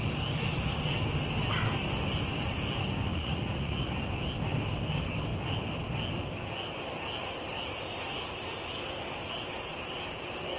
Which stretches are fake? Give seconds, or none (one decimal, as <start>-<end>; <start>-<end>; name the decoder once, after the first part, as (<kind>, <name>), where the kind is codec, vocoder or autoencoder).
3.1-3.9 (vocoder, Vocos)